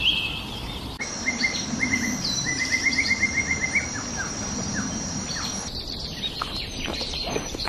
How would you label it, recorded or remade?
remade